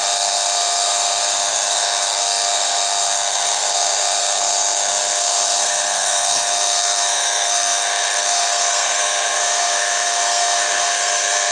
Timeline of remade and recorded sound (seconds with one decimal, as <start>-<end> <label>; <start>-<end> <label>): 0.0-11.5 remade

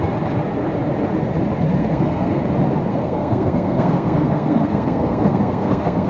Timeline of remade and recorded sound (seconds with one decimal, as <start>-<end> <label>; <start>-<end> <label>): 0.0-1.8 recorded; 1.8-2.4 remade; 2.4-2.9 recorded; 2.9-6.1 remade